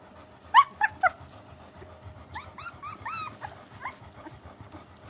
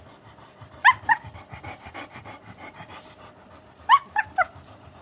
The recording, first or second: first